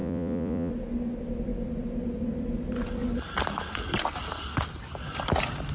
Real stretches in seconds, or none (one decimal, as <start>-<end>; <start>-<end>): 0.7-5.7